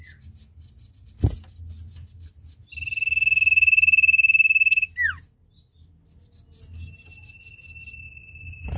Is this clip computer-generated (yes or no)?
no